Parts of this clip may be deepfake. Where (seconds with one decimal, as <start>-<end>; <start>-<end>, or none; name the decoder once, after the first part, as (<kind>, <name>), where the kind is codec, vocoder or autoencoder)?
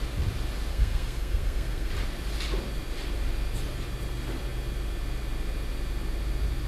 0.7-1.9 (codec, SNAC)